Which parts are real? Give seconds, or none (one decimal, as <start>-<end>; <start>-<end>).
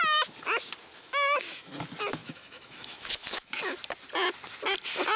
0.0-1.0; 1.8-2.2; 3.6-5.2